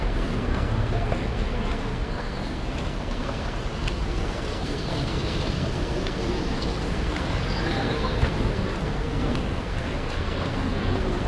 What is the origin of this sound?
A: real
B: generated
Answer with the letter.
B